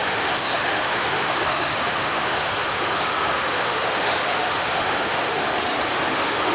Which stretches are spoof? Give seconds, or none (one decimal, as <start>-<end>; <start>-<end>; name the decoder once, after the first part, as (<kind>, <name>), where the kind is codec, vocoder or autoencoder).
0.0-5.4 (autoencoder, DAC-VAE); 6.1-6.5